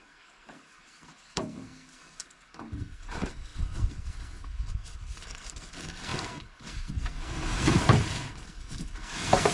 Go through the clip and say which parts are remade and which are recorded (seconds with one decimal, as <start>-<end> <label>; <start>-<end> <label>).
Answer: 0.0-9.5 remade